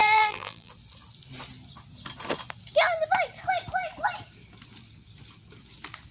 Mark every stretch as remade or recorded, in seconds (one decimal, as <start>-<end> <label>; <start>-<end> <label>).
0.0-0.7 remade; 0.7-6.1 recorded